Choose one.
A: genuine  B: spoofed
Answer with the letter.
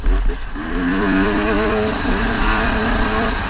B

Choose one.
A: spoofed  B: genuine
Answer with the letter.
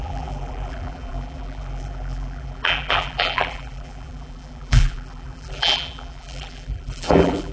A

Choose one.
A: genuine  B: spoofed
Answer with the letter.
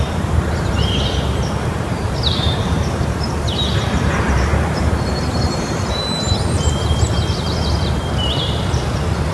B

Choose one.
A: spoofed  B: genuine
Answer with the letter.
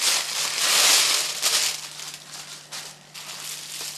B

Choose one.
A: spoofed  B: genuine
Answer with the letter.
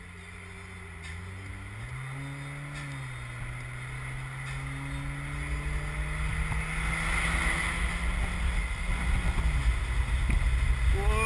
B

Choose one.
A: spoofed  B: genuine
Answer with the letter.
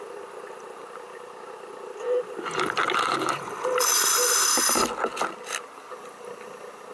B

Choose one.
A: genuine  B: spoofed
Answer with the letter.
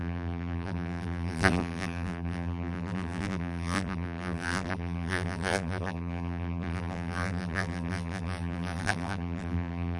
B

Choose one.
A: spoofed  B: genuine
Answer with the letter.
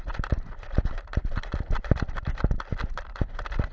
B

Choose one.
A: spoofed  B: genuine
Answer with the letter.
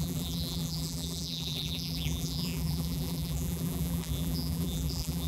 A